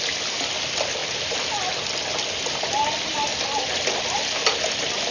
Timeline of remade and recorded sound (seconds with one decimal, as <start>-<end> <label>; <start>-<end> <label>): 0.0-5.1 recorded